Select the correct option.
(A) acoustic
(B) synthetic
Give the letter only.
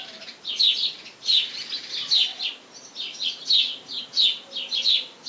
A